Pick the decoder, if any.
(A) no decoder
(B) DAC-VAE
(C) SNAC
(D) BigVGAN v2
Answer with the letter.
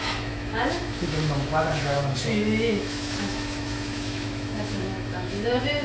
B